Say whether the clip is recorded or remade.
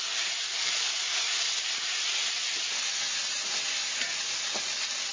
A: recorded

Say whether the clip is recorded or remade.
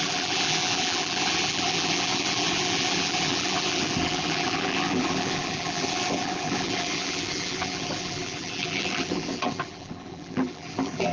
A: remade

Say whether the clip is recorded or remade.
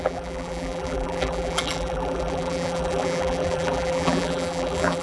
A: remade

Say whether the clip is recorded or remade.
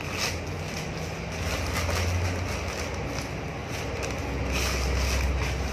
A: recorded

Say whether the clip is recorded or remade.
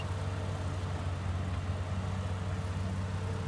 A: recorded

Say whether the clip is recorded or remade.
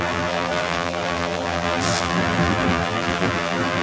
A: remade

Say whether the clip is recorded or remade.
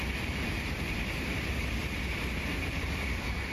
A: remade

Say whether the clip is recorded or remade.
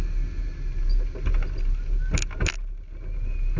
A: recorded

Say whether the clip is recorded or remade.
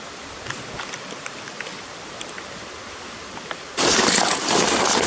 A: remade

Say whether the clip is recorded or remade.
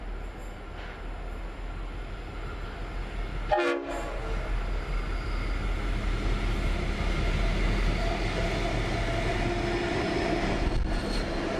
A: recorded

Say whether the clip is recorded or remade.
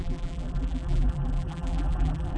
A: remade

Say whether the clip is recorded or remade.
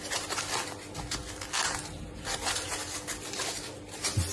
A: recorded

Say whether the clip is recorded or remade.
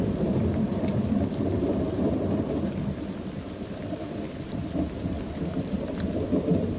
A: remade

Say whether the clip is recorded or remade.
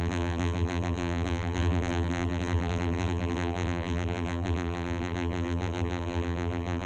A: remade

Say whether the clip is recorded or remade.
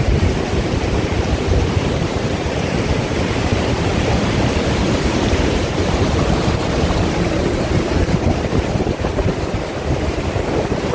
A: remade